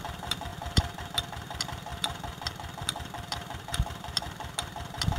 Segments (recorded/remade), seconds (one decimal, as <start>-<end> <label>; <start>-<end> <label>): 0.0-5.2 remade

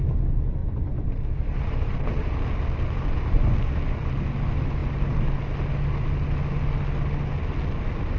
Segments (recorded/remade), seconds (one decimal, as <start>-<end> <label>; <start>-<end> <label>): 0.0-0.6 recorded; 0.6-2.0 remade; 2.0-8.2 recorded

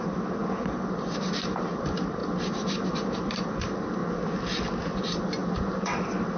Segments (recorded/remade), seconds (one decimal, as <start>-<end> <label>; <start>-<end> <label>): 0.0-4.0 remade; 4.0-5.0 recorded; 5.0-6.4 remade

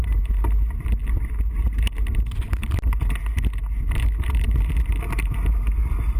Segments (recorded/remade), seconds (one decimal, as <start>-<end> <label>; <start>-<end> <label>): 0.0-6.2 recorded

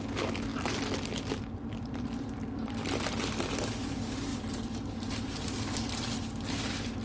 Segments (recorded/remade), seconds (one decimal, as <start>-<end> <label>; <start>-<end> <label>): 0.0-0.5 recorded; 0.5-3.5 remade; 3.5-4.3 recorded; 4.3-6.1 remade; 6.1-7.0 recorded

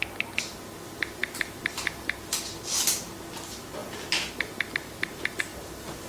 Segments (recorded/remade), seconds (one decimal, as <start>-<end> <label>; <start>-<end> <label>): 0.0-3.8 recorded; 3.8-4.3 remade; 4.3-5.5 recorded; 5.5-6.1 remade

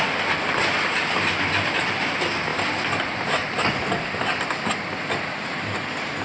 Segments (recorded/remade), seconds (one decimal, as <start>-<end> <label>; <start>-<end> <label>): 0.0-6.2 remade